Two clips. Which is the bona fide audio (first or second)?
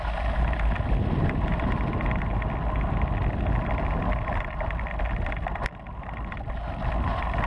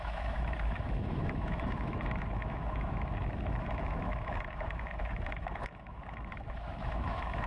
first